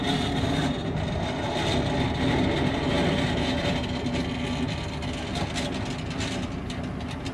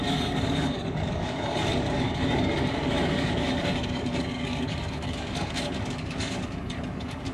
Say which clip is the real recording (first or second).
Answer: first